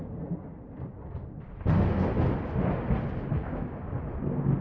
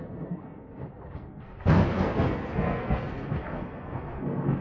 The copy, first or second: second